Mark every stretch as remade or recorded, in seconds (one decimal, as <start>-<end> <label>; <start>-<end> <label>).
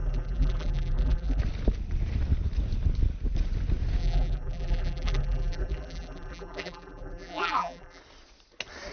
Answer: 0.0-1.4 remade; 1.4-4.0 recorded; 4.0-8.0 remade; 8.0-8.9 recorded